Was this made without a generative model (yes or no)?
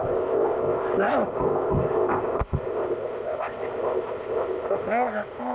no